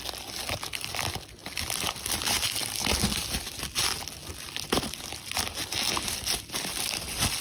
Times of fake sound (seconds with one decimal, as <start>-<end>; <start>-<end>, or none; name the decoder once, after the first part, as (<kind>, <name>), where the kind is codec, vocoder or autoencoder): none